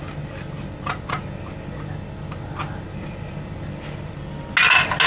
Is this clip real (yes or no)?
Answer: yes